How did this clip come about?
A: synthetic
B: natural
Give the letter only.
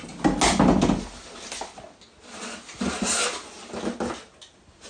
B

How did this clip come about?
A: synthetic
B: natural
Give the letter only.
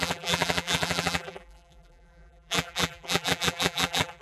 A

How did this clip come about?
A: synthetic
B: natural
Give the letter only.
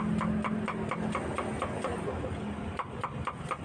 B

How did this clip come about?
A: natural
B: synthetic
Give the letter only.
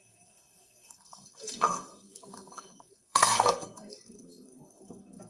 B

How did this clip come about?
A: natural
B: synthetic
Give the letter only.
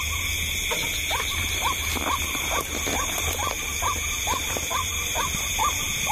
B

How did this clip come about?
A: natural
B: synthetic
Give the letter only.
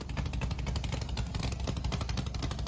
A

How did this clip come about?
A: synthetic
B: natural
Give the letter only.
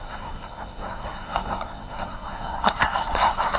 A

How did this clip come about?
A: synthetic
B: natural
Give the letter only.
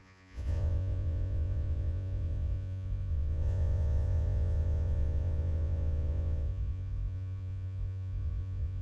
A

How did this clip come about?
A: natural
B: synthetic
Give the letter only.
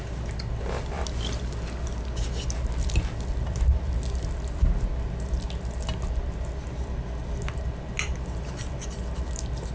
A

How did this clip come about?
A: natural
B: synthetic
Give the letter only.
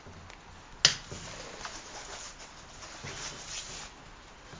A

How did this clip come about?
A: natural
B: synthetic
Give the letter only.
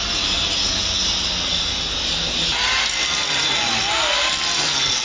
A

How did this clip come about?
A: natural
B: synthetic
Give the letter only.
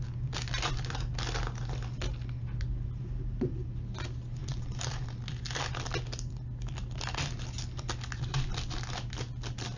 A